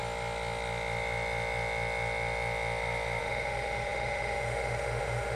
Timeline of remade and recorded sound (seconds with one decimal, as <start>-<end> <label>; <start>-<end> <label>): 0.0-3.2 recorded; 3.2-5.4 remade